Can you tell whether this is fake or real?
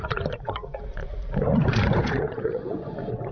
fake